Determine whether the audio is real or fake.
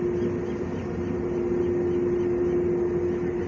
real